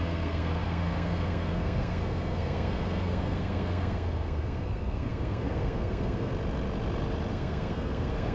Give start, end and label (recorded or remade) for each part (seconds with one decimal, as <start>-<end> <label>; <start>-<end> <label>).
0.0-6.3 remade; 6.3-7.3 recorded; 7.3-8.3 remade